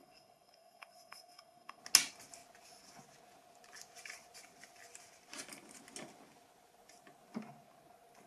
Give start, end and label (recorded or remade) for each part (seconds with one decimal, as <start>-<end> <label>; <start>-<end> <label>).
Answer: 0.0-1.8 remade; 1.8-8.3 recorded